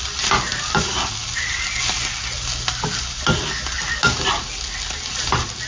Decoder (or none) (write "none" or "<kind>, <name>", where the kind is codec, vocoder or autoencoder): none